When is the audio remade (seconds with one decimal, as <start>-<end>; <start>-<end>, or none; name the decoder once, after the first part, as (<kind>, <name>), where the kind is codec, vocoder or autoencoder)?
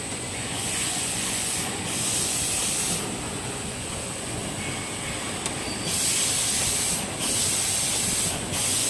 0.0-2.5 (vocoder, Vocos); 3.2-4.4; 8.3-8.9